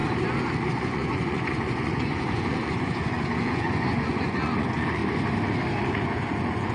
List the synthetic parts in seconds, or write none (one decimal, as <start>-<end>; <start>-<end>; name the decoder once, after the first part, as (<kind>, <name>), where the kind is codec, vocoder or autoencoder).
0.7-5.0 (vocoder, Vocos); 5.9-6.7